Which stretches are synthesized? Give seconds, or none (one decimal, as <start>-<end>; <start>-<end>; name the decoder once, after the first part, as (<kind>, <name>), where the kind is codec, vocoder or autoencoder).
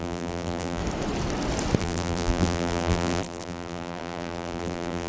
0.0-0.8 (vocoder, BigVGAN v2); 1.8-5.1